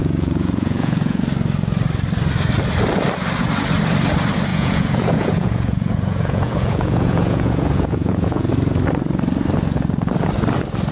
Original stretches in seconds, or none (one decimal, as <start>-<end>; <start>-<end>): 1.2-4.5; 8.5-10.9